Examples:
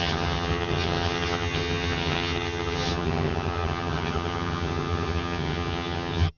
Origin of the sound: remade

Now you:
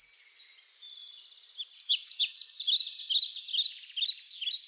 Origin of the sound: recorded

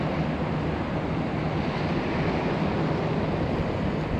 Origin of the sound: recorded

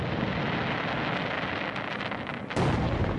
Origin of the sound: recorded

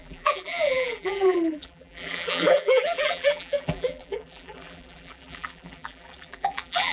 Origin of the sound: remade